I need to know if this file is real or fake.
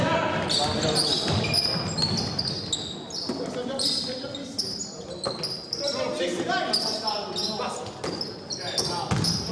real